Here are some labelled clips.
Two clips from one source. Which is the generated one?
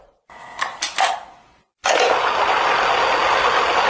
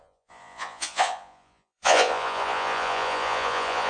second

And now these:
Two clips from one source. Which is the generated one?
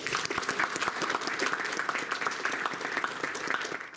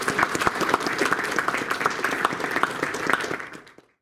second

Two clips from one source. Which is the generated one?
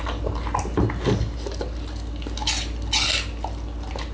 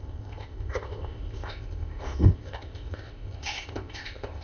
second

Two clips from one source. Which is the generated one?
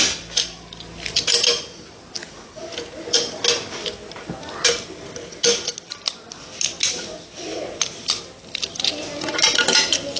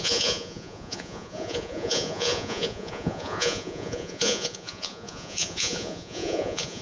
second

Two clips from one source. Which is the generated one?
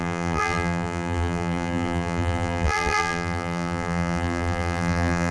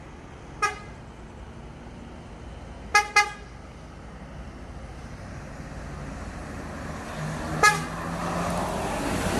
first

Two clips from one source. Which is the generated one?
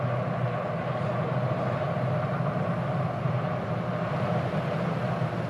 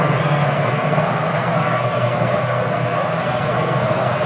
second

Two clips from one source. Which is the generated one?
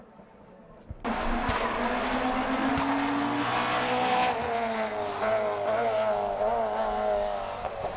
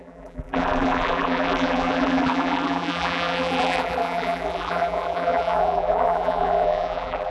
second